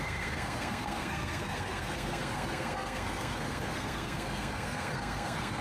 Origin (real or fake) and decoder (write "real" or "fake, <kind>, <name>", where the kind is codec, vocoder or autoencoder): fake, codec, SNAC